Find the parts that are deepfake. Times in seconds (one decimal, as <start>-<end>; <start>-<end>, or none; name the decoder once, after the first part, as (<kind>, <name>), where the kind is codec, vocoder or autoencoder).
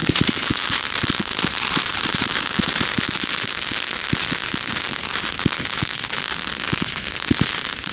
0.0-3.0 (vocoder, BigVGAN v2)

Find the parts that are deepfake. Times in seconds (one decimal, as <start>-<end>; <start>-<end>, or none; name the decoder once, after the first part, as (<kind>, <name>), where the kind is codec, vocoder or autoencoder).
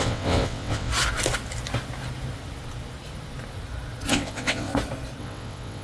0.0-0.9 (vocoder, WaveNeXt); 4.1-4.7; 5.2-5.8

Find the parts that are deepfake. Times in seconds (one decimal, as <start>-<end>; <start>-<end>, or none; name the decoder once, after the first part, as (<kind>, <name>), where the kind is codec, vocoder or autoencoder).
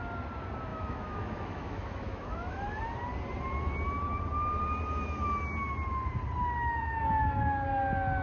0.7-2.8 (autoencoder, DAC-VAE)